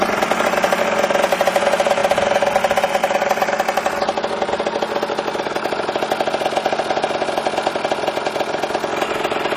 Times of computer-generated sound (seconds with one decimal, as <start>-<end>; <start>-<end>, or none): none